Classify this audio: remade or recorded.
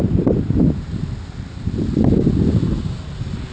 recorded